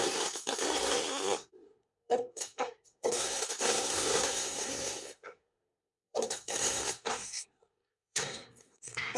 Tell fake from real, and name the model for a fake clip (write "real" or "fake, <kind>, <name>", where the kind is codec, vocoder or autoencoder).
fake, codec, SNAC